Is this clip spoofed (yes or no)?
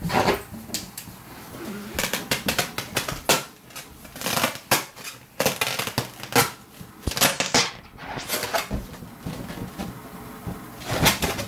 no